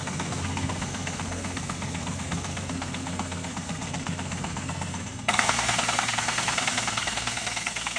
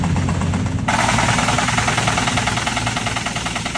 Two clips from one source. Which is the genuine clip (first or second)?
second